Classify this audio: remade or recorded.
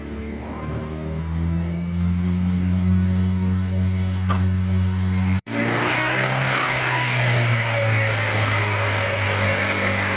remade